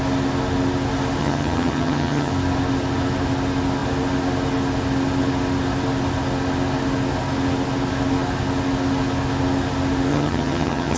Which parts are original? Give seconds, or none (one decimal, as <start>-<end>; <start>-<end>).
0.0-1.2; 2.3-10.1